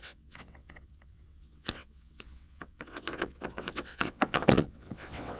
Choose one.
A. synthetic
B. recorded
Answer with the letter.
A